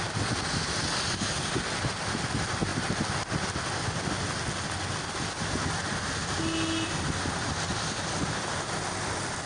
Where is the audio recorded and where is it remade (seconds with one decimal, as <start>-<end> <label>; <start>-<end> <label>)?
0.0-9.5 recorded